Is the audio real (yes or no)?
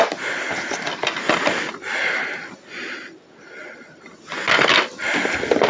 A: yes